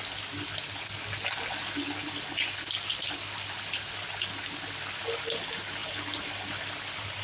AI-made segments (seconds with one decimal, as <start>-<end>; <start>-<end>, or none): none